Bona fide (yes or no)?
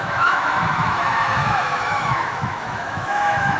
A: no